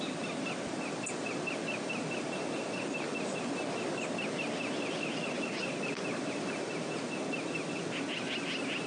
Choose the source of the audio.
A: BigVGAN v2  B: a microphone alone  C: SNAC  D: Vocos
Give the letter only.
B